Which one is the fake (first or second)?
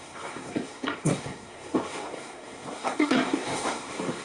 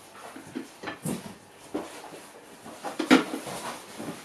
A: first